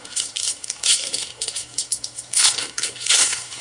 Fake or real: fake